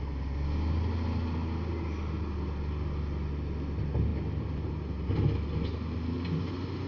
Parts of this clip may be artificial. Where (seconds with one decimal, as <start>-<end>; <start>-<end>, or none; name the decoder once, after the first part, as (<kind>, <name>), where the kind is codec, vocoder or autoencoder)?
none